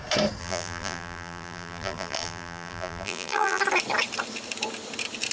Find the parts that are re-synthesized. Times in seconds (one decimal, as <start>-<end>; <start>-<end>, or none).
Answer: 0.4-3.6